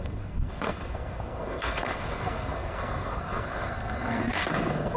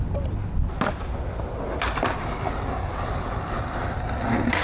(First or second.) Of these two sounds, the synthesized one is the first